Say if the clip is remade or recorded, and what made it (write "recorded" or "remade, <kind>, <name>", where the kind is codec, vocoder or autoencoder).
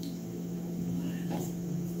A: remade, autoencoder, DAC-VAE